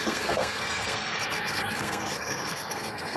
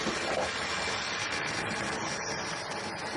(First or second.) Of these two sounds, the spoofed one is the first